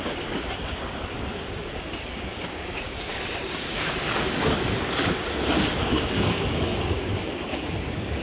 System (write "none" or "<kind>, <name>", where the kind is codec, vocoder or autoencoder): codec, DAC